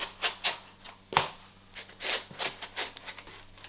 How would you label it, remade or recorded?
recorded